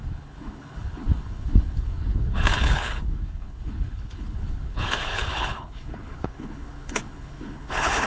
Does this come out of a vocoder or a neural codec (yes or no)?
yes